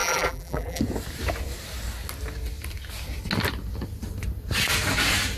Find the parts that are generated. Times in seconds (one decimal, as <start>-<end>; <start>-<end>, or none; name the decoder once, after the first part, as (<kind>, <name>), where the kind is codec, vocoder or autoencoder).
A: 0.0-0.8 (vocoder, BigVGAN v2)